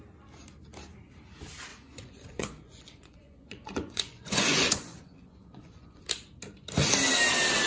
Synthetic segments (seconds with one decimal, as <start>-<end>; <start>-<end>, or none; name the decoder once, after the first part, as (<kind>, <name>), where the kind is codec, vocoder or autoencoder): 1.7-6.0 (vocoder, Vocos)